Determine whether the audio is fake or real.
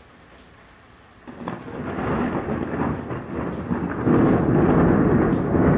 real